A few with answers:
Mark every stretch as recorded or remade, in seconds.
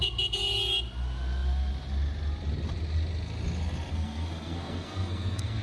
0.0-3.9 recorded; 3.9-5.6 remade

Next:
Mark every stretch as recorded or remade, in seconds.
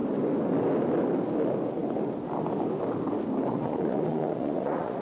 0.0-3.5 recorded; 3.5-5.0 remade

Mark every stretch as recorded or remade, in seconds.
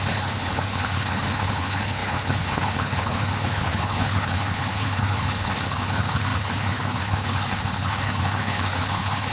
0.0-9.3 remade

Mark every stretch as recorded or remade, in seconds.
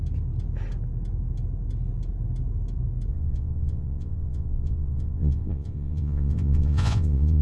0.0-3.1 recorded; 3.1-7.4 remade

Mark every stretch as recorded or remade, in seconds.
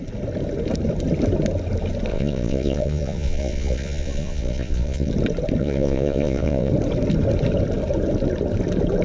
0.0-2.1 recorded; 2.1-5.1 remade; 5.1-5.6 recorded; 5.6-6.7 remade; 6.7-9.0 recorded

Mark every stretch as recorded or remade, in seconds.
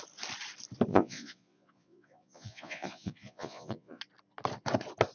0.0-0.9 recorded; 0.9-4.0 remade; 4.0-5.1 recorded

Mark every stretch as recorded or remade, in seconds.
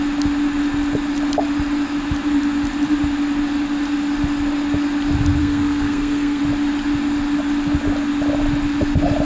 0.0-5.4 recorded; 5.4-6.4 remade; 6.4-9.2 recorded